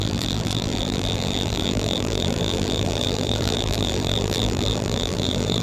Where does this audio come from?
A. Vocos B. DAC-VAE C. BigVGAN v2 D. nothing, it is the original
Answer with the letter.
C